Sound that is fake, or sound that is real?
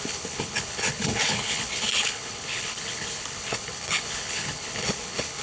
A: fake